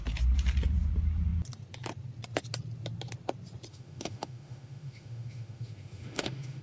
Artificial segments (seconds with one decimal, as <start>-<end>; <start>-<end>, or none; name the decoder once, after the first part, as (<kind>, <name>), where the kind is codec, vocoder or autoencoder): 3.7-6.6 (autoencoder, DAC-VAE)